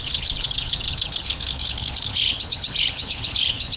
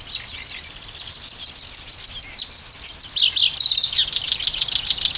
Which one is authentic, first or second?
second